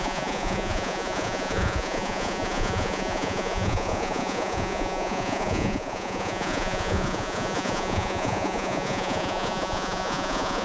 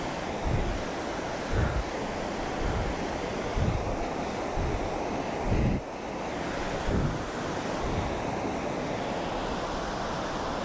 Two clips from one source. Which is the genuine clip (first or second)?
second